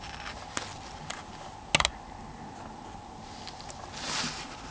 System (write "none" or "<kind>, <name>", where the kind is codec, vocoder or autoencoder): none